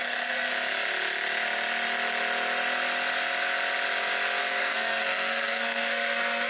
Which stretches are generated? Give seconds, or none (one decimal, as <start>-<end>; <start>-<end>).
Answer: 0.0-0.5; 4.4-6.5